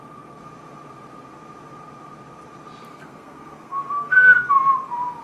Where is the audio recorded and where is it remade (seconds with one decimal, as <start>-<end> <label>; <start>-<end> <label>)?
0.0-2.9 recorded; 2.9-4.5 remade; 4.5-5.2 recorded